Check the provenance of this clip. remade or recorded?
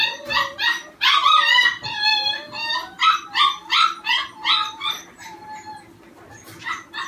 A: recorded